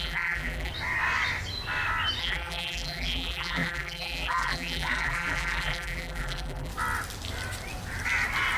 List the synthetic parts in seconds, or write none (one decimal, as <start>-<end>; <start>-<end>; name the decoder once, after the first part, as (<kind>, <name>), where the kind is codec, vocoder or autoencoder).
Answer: 0.0-0.7 (vocoder, BigVGAN v2); 2.2-6.7